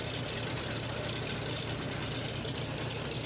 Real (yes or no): yes